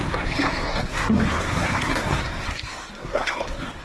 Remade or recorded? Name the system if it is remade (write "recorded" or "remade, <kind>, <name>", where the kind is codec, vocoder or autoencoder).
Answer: remade, codec, SNAC